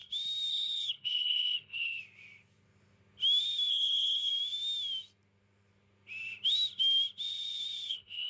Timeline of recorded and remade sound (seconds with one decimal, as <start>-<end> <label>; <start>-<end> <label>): 0.0-0.5 recorded; 0.5-2.0 remade; 2.0-3.7 recorded; 3.7-4.3 remade; 4.3-7.9 recorded; 7.9-8.3 remade